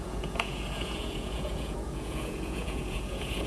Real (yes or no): no